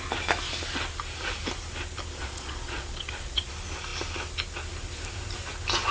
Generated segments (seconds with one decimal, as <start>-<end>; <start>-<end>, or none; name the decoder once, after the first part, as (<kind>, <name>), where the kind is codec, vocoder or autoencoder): 2.2-3.5 (vocoder, Vocos)